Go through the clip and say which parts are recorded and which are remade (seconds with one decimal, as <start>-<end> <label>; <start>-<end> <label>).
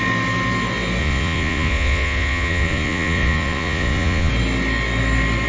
0.0-1.0 recorded; 1.0-4.3 remade; 4.3-5.5 recorded